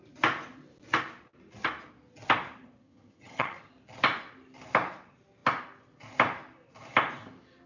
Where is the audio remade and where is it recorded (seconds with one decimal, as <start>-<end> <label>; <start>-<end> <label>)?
0.0-2.8 recorded; 2.8-3.7 remade; 3.7-7.7 recorded